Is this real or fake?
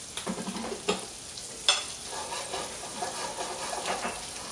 real